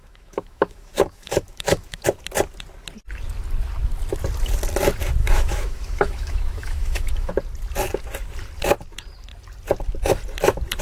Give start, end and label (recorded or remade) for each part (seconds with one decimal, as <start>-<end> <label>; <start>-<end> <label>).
0.0-2.0 remade; 2.0-5.2 recorded; 5.2-7.3 remade; 7.3-10.8 recorded